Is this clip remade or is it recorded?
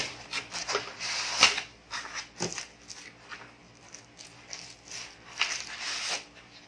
recorded